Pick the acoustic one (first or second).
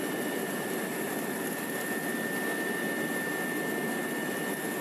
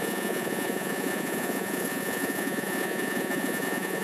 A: first